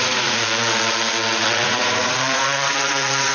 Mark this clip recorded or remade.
remade